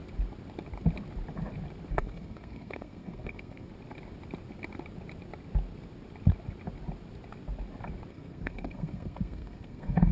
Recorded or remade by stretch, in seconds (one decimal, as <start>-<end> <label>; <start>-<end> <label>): 0.0-1.9 recorded; 1.9-3.7 remade; 3.7-8.1 recorded; 8.1-10.1 remade